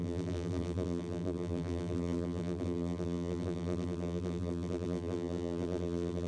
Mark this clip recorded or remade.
remade